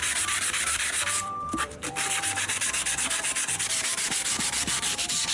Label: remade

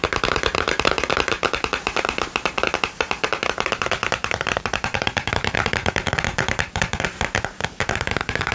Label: remade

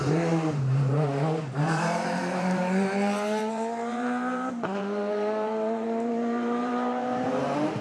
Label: remade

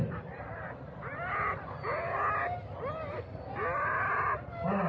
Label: recorded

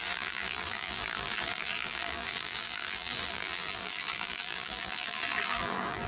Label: remade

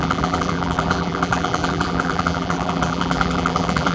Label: remade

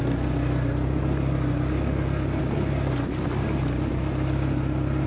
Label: recorded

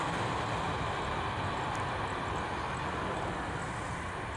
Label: recorded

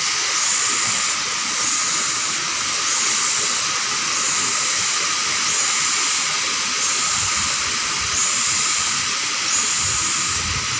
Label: recorded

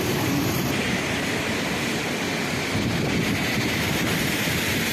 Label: remade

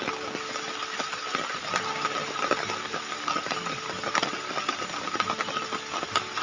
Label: remade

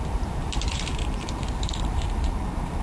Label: remade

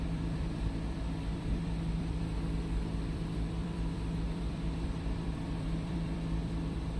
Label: remade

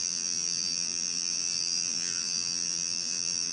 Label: remade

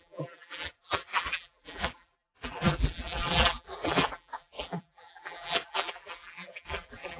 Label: remade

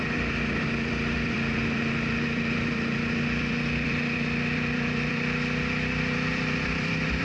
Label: remade